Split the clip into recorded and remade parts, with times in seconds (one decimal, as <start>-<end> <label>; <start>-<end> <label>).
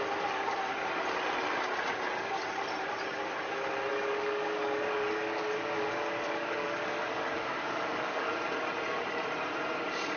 0.0-3.9 recorded; 3.9-8.3 remade; 8.3-10.2 recorded